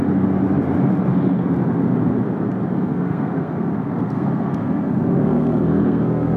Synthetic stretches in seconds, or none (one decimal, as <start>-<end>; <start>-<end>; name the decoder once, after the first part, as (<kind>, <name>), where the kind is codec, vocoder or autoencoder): 2.7-6.4 (codec, SNAC)